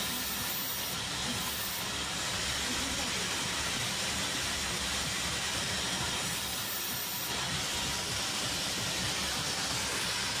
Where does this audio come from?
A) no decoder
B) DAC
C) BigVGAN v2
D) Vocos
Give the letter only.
A